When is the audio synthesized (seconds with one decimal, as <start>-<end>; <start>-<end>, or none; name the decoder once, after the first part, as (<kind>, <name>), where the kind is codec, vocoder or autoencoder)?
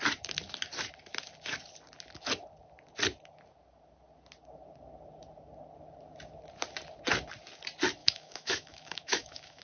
8.0-9.6 (autoencoder, DAC-VAE)